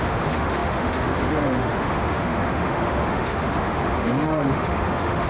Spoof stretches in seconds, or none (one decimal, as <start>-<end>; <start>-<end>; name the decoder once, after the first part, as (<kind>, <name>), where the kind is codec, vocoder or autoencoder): 0.0-5.3 (autoencoder, DAC-VAE)